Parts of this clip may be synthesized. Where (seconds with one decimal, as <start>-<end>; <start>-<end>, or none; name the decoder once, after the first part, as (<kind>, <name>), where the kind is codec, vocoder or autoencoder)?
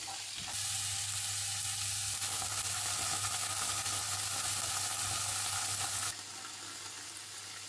none